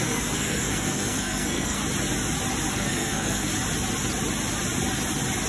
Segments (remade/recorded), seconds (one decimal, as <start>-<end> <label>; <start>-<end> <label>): 0.0-1.8 remade; 1.8-2.7 recorded; 2.7-3.5 remade; 3.5-5.5 recorded